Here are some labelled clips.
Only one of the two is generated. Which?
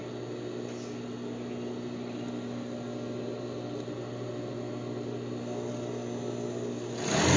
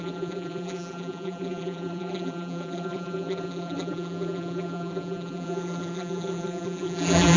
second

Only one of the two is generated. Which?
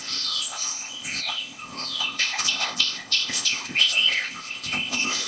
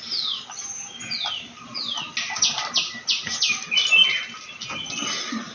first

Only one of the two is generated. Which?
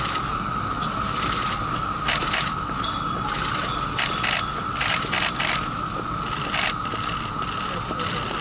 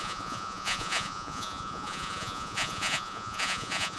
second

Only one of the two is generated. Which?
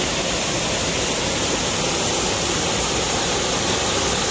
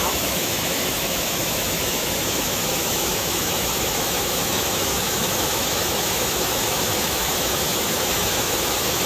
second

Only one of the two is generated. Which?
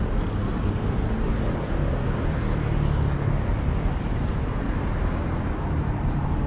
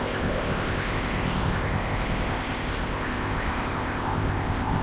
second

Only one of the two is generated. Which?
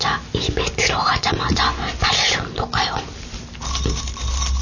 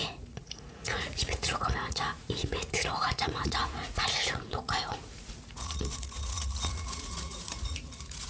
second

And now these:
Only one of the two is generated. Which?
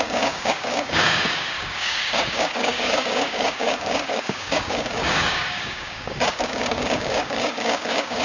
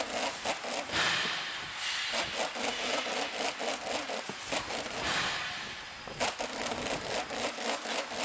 first